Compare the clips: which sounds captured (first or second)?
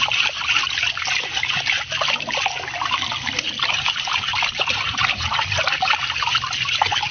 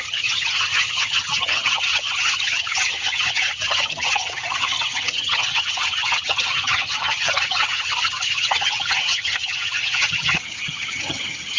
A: first